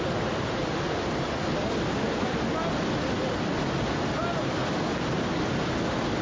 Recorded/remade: recorded